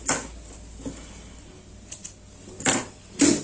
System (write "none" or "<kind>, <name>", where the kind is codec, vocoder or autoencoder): none